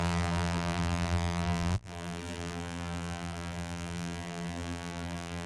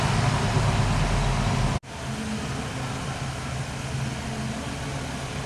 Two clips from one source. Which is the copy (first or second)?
first